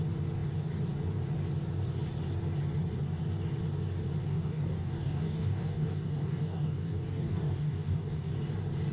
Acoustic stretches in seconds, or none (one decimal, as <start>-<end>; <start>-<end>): 0.0-4.2; 8.3-8.9